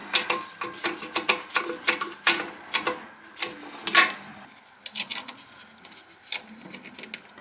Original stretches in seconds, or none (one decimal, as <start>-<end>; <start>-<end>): 0.0-7.4